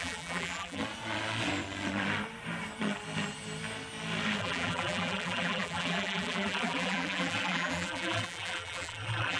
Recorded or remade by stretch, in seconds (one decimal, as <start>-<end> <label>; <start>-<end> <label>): 0.0-0.8 remade; 0.8-4.4 recorded; 4.4-9.4 remade